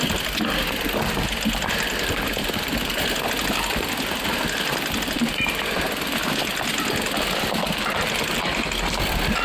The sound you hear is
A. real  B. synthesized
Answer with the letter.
A